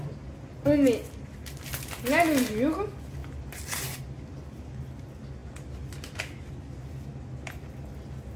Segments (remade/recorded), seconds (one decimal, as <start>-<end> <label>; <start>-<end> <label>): 0.0-8.4 recorded